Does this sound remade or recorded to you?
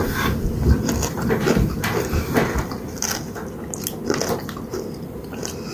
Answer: recorded